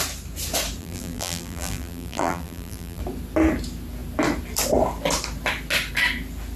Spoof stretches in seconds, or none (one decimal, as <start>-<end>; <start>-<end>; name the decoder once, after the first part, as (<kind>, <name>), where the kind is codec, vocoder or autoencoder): 0.8-3.0 (vocoder, BigVGAN v2)